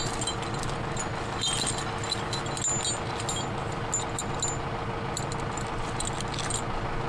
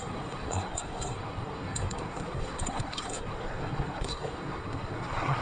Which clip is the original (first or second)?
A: first